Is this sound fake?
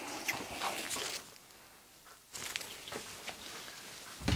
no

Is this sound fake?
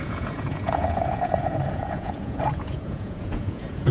yes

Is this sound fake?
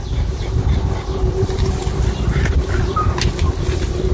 no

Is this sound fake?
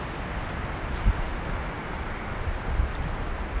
no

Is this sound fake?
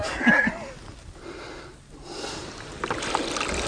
no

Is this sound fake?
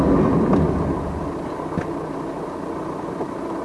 no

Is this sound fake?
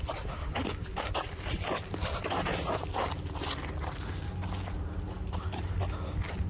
no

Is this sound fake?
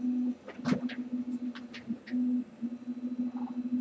no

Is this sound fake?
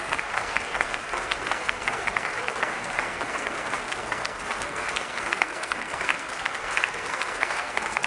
yes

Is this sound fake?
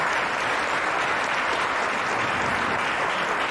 no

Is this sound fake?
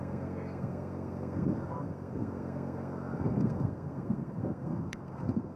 yes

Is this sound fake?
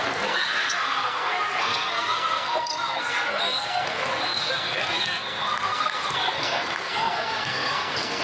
yes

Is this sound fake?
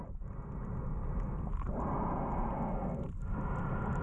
no